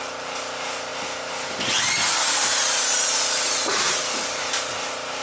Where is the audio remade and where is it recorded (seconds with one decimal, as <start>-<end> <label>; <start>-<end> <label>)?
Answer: 0.0-5.2 recorded